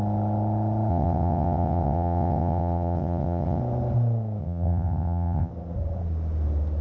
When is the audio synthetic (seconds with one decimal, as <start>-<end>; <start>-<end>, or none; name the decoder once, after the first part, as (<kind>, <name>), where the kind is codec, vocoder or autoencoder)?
0.9-3.6 (vocoder, WaveNeXt); 4.4-5.5